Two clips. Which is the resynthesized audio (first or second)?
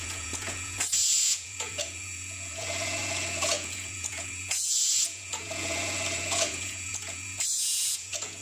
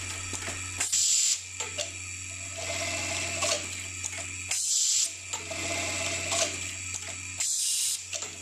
first